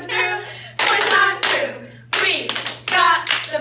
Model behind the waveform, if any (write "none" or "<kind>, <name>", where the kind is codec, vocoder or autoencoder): none